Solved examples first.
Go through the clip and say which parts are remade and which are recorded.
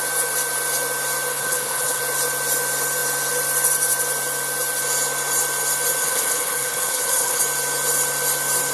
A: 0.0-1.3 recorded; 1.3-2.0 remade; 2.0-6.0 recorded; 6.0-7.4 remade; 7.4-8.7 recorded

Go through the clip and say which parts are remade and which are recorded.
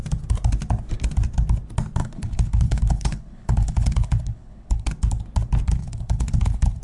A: 0.0-2.0 recorded; 2.0-4.9 remade; 4.9-5.8 recorded; 5.8-6.8 remade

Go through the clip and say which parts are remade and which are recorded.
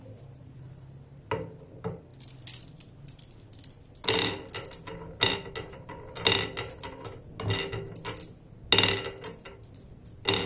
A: 0.0-10.5 recorded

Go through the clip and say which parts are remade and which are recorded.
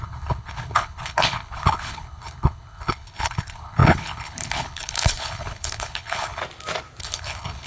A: 0.0-6.4 remade; 6.4-7.0 recorded; 7.0-7.7 remade